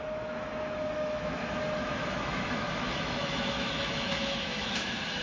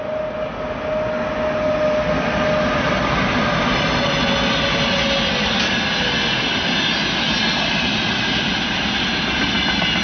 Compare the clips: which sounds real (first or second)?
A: second